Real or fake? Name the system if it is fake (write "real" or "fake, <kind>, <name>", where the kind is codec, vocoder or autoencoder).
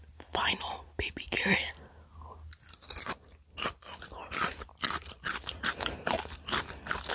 real